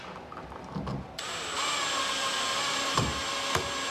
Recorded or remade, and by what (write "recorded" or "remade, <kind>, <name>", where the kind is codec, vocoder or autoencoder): recorded